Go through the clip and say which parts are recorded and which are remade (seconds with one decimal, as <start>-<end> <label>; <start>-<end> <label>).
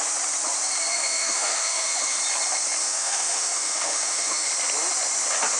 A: 0.0-0.9 recorded; 0.9-2.2 remade; 2.2-2.8 recorded; 2.8-4.5 remade; 4.5-5.6 recorded